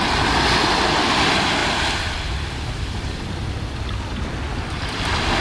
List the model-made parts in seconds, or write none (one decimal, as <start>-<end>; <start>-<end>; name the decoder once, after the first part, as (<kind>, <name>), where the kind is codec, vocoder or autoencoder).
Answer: none